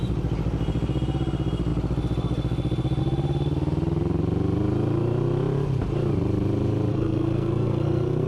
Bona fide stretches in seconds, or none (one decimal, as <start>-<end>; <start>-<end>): 0.0-6.9